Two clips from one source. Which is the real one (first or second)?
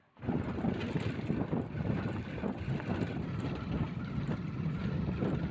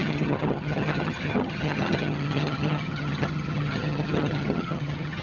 first